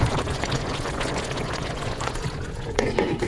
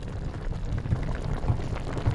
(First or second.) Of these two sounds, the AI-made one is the first